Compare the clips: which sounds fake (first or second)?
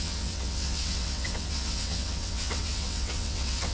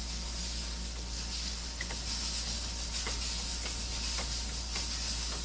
first